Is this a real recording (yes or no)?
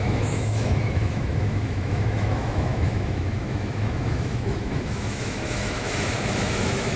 no